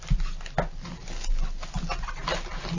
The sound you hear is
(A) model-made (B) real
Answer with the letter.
B